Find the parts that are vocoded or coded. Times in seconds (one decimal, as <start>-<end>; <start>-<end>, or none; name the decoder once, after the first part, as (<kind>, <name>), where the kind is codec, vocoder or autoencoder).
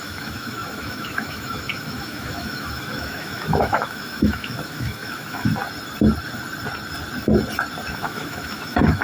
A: 0.0-5.5 (autoencoder, DAC-VAE); 7.9-9.0